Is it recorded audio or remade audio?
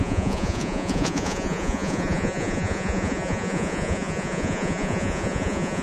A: remade